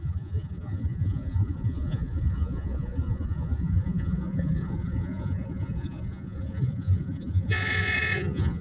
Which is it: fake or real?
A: fake